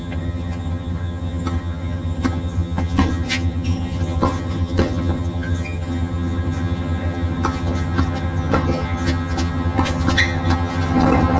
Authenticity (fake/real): fake